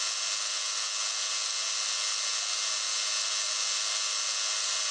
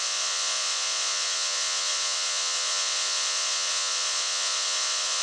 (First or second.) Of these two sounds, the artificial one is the second